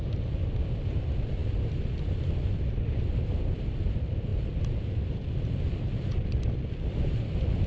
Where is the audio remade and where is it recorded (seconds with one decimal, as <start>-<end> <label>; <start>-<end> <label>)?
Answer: 0.0-7.7 recorded